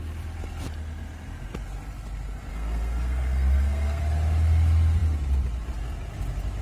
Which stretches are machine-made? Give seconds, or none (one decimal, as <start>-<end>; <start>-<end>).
2.5-4.0